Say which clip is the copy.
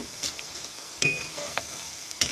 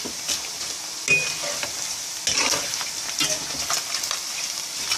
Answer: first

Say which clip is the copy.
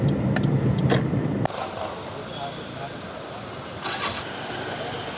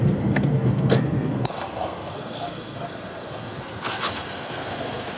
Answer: second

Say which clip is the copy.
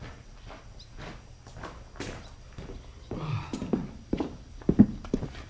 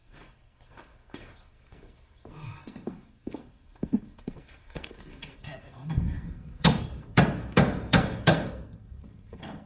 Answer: second